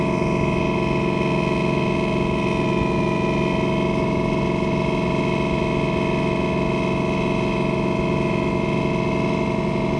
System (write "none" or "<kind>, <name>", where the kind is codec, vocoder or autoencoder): none